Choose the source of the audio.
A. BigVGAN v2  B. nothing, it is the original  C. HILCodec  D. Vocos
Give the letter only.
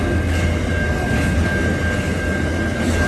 B